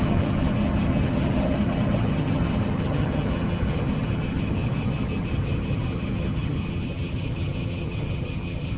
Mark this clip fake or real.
fake